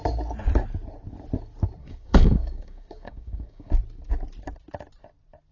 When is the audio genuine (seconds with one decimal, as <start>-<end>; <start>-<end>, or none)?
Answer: 0.0-1.8; 3.7-5.5